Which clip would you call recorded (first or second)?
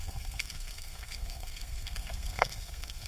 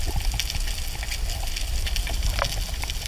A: second